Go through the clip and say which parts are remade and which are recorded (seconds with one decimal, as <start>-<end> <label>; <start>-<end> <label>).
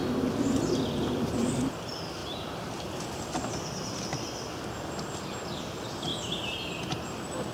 0.0-2.2 recorded; 2.2-4.0 remade; 4.0-7.5 recorded